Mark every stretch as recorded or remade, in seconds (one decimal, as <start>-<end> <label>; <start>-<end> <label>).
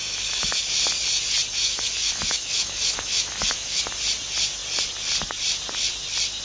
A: 0.0-0.7 remade; 0.7-1.6 recorded; 1.6-3.8 remade; 3.8-6.4 recorded